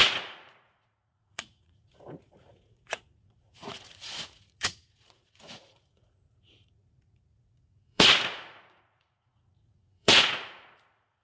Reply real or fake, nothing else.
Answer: fake